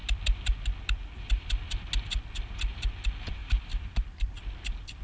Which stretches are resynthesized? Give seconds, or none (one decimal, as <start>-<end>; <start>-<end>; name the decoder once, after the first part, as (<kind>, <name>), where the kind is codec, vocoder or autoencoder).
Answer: 3.4-4.3 (vocoder, BigVGAN v2)